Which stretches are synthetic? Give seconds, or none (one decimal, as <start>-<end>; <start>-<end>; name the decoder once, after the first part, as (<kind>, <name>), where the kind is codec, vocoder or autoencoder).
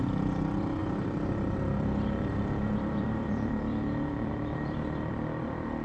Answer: 0.0-5.8 (vocoder, BigVGAN v2)